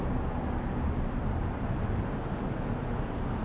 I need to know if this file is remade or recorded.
recorded